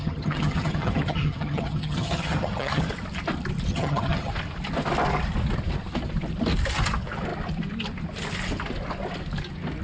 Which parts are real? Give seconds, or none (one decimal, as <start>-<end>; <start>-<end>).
2.8-3.7; 4.3-9.8